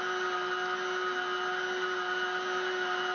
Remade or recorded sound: recorded